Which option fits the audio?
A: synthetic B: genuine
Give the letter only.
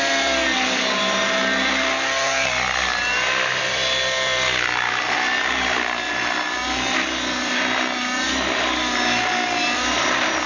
B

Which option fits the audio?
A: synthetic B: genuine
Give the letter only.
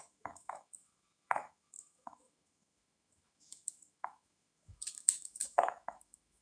A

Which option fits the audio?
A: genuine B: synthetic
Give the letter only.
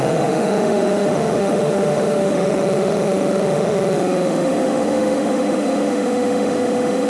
B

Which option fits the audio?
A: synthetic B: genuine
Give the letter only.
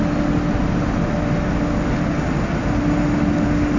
B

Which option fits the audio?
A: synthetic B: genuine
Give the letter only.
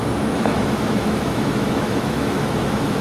A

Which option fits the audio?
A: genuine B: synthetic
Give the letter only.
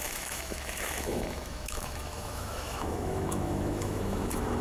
B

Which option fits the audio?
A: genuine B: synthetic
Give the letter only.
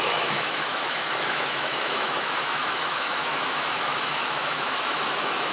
B